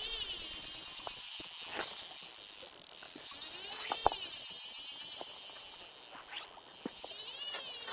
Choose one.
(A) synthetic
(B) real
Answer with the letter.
B